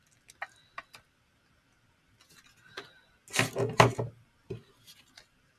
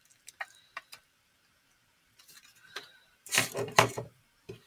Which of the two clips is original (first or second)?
first